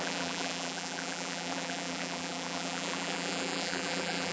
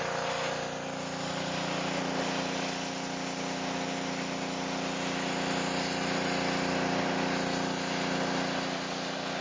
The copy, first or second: first